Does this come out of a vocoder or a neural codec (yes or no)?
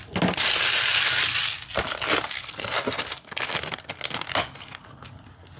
no